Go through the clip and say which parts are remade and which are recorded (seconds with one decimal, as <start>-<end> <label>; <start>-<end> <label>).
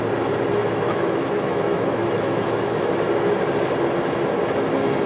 0.0-0.6 recorded; 0.6-2.9 remade; 2.9-5.1 recorded